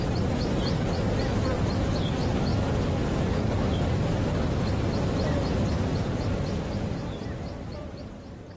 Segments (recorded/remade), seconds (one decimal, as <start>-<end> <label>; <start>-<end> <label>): 0.0-2.5 remade; 2.5-5.5 recorded; 5.5-5.9 remade; 5.9-7.2 recorded; 7.2-8.6 remade